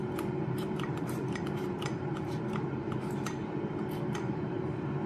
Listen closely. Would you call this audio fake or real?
fake